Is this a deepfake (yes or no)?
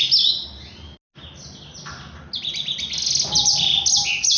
no